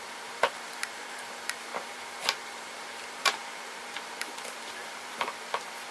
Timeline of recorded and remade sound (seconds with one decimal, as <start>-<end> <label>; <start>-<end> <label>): 0.0-5.9 remade